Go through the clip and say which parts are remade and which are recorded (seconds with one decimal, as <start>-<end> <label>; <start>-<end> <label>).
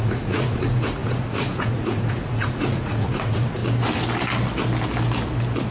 0.0-3.6 remade; 3.6-5.7 recorded